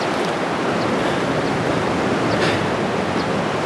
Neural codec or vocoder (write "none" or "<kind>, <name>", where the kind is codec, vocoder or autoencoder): none